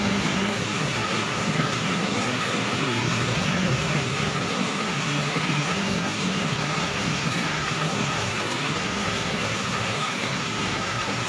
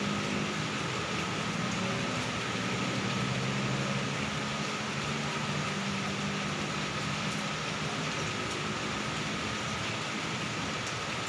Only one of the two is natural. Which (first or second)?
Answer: second